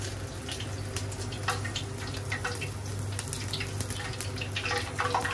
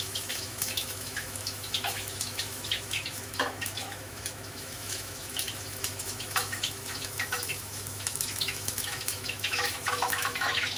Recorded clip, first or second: first